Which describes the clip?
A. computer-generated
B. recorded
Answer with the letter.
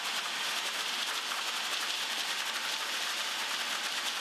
B